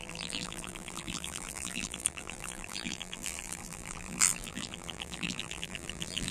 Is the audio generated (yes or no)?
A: yes